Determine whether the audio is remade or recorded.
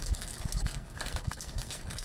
remade